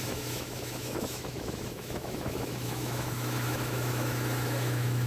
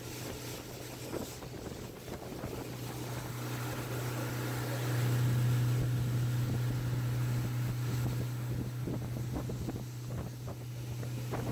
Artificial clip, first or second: first